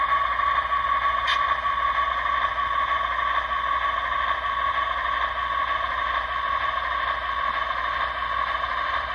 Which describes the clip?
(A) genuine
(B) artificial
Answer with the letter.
A